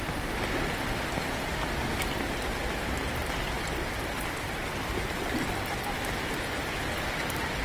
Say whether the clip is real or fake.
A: real